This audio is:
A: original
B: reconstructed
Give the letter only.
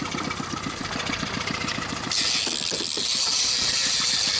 B